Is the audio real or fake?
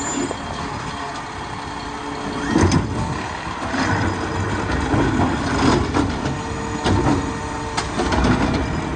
real